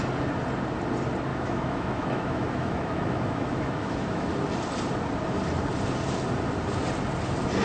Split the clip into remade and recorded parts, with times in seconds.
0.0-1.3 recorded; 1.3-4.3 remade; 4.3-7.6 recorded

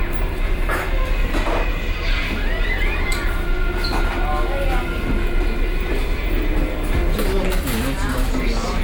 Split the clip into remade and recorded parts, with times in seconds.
0.0-8.8 recorded

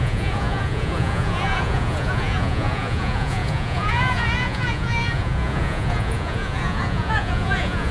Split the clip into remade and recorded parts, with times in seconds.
0.0-7.9 remade

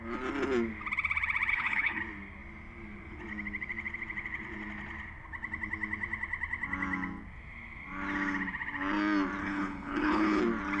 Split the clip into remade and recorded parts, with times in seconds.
0.0-1.5 recorded; 1.5-2.0 remade; 2.0-9.4 recorded; 9.4-10.4 remade; 10.4-10.8 recorded

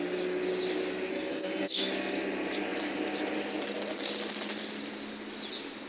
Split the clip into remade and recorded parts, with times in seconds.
0.0-1.1 recorded; 1.1-1.9 remade; 1.9-5.9 recorded

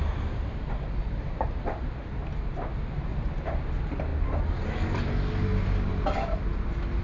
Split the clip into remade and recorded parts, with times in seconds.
0.0-7.0 recorded